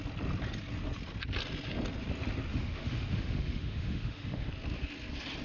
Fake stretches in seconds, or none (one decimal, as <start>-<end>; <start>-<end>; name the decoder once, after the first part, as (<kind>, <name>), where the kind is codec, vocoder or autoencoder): 2.5-4.5 (autoencoder, DAC-VAE)